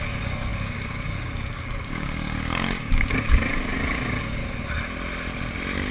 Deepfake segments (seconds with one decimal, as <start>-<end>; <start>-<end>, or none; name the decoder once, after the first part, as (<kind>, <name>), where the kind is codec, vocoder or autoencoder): 0.0-4.4 (codec, DAC)